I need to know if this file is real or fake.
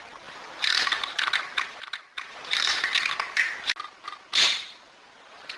real